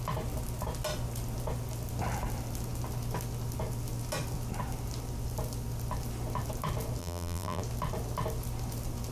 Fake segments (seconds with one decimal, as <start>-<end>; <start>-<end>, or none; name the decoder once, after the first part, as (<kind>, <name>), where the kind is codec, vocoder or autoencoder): 7.0-7.6 (vocoder, BigVGAN v2)